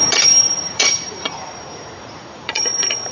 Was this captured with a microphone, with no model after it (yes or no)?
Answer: no